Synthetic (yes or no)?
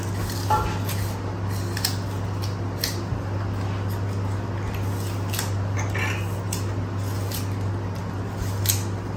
no